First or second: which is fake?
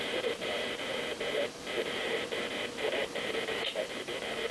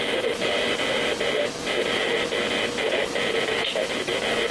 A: first